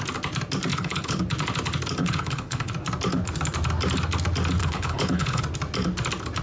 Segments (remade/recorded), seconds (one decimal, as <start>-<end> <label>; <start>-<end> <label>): 0.0-0.7 recorded; 0.7-1.2 remade; 1.2-2.0 recorded; 2.0-2.7 remade; 2.7-4.6 recorded; 4.6-5.4 remade; 5.4-6.4 recorded